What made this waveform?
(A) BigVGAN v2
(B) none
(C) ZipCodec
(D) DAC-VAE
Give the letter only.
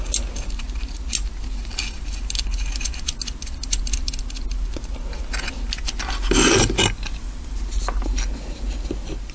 B